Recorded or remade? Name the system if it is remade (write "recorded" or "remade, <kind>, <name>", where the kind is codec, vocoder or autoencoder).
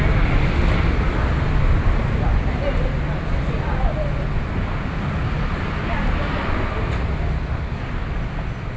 recorded